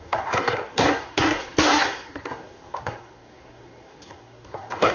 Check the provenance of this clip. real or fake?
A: fake